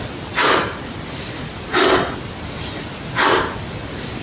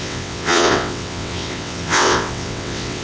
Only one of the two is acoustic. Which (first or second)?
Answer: first